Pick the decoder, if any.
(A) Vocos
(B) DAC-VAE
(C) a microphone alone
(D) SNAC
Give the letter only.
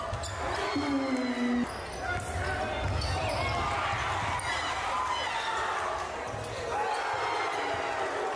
C